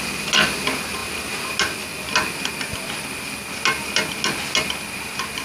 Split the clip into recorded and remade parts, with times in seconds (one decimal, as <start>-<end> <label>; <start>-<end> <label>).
0.0-5.4 recorded